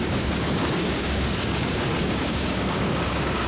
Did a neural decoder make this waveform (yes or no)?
yes